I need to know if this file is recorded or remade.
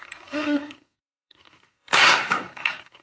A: remade